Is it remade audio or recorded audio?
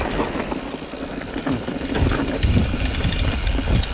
recorded